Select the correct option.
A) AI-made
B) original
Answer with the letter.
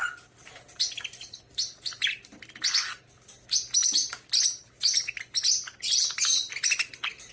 B